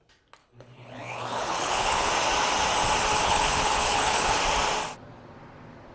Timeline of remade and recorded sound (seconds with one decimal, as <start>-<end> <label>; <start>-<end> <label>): 0.0-0.4 recorded; 0.4-2.1 remade; 2.1-3.2 recorded; 3.2-4.4 remade; 4.4-5.9 recorded